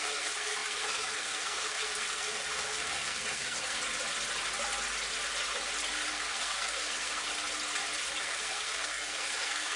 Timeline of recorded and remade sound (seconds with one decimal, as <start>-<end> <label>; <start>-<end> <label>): 0.0-3.8 remade; 3.8-6.1 recorded; 6.1-7.3 remade; 7.3-8.2 recorded; 8.2-9.8 remade